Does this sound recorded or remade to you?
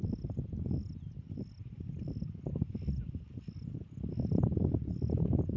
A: recorded